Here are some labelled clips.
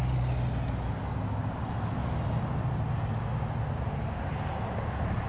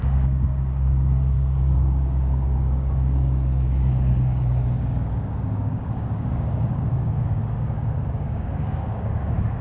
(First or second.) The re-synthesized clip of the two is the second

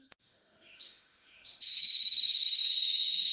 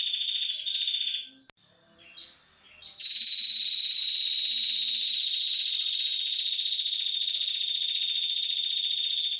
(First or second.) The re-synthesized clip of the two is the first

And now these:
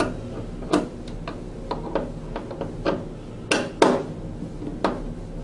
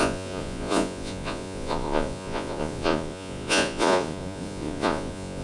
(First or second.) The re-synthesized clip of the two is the second